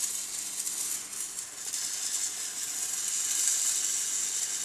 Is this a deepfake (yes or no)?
no